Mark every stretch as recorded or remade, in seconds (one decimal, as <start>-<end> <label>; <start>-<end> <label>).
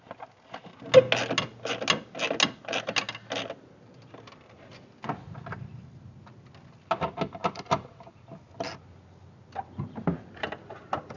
0.0-11.2 recorded